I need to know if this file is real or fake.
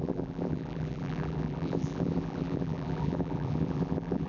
fake